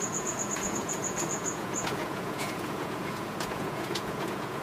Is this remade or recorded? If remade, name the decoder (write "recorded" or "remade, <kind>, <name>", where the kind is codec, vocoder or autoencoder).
remade, vocoder, Vocos